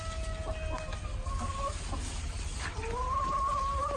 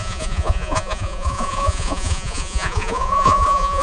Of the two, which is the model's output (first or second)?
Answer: second